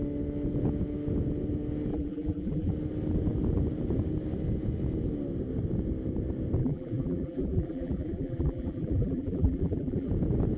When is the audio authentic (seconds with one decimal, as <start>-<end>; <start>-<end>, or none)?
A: 0.0-1.9; 2.7-6.6; 10.1-10.6